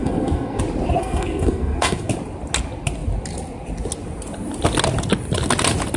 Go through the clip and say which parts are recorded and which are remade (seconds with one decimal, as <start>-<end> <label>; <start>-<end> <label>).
0.0-0.6 remade; 0.6-1.0 recorded; 1.0-2.1 remade; 2.1-6.0 recorded